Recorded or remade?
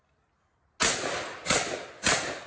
recorded